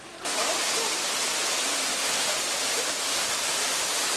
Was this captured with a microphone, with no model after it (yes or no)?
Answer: yes